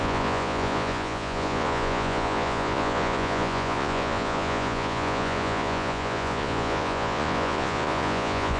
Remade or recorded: remade